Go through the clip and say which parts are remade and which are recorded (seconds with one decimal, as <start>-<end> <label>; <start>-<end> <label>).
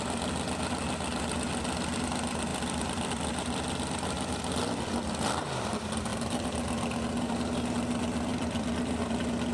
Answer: 0.0-6.1 recorded; 6.1-7.3 remade; 7.3-8.3 recorded; 8.3-9.0 remade; 9.0-9.5 recorded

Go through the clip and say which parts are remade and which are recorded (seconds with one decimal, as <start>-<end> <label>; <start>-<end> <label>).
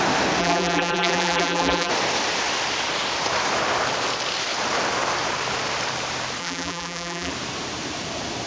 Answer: 0.0-0.4 recorded; 0.4-1.9 remade; 1.9-6.4 recorded; 6.4-7.3 remade; 7.3-8.5 recorded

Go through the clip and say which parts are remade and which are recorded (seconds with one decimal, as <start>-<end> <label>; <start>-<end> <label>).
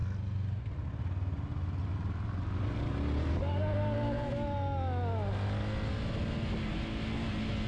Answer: 0.0-7.7 recorded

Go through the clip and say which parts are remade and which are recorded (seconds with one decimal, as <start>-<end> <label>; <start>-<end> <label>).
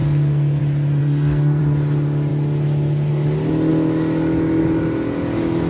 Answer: 0.0-0.6 remade; 0.6-1.0 recorded; 1.0-1.6 remade; 1.6-5.7 recorded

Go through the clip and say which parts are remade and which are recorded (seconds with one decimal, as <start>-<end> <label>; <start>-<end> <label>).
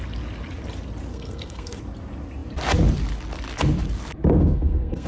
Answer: 0.0-1.1 recorded; 1.1-1.8 remade; 1.8-4.4 recorded; 4.4-5.1 remade